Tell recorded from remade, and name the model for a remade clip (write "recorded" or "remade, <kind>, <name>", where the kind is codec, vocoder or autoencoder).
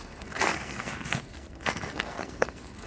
remade, codec, SNAC